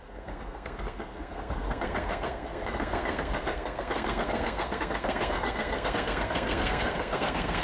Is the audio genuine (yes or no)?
no